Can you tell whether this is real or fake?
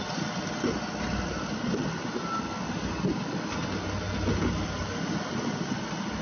real